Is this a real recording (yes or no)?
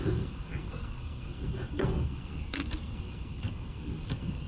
no